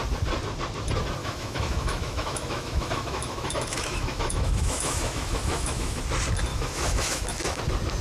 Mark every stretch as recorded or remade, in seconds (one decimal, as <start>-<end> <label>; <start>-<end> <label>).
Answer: 0.0-1.2 recorded; 1.2-6.0 remade; 6.0-6.5 recorded; 6.5-7.6 remade; 7.6-8.0 recorded